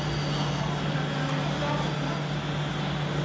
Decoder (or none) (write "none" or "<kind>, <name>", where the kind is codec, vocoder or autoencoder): none